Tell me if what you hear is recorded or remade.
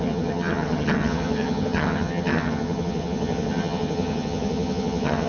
remade